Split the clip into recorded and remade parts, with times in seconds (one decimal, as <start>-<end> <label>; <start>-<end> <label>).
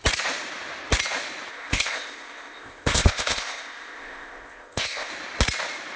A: 0.0-1.5 recorded; 1.5-5.1 remade; 5.1-6.0 recorded